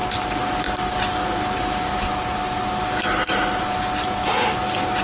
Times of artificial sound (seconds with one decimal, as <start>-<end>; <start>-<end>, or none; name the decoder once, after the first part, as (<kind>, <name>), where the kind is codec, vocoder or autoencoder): none